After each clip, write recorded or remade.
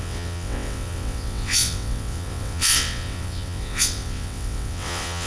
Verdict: remade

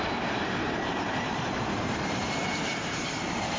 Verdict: remade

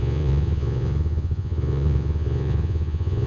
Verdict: remade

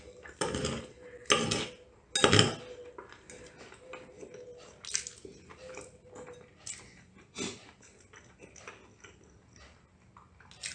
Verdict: recorded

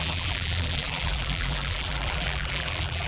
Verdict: remade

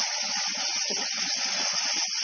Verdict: remade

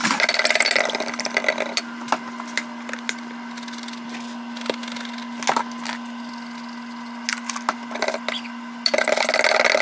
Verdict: recorded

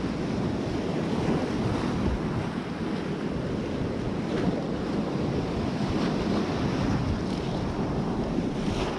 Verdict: recorded